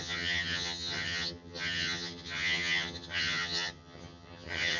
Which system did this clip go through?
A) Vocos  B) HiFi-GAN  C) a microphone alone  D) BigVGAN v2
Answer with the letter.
B